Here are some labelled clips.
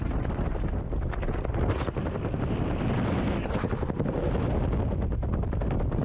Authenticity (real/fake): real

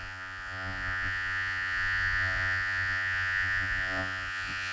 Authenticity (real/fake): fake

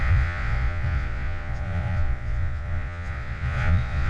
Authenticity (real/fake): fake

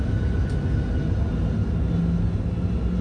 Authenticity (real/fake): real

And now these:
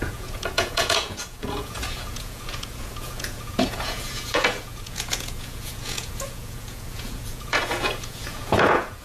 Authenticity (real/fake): fake